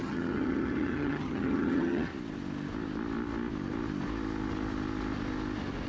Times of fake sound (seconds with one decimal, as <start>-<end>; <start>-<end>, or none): 0.0-2.1